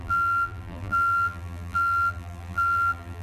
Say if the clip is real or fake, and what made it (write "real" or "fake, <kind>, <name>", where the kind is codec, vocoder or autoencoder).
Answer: fake, vocoder, BigVGAN v2